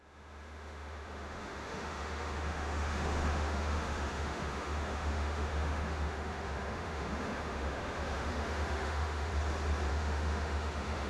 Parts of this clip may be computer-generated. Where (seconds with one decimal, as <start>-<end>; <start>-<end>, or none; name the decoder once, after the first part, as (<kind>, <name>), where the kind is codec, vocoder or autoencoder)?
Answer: 0.0-9.3 (autoencoder, DAC-VAE); 9.9-11.1